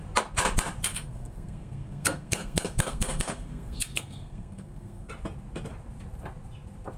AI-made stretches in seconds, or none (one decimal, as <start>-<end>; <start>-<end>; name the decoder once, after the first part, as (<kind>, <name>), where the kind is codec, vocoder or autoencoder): 0.9-5.1 (codec, SNAC)